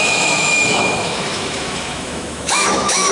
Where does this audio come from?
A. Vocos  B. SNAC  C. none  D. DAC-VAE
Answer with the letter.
D